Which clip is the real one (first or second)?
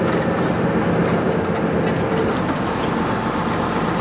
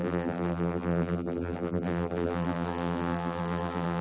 first